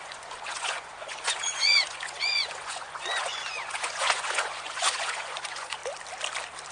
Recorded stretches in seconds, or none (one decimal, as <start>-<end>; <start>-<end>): 5.8-6.7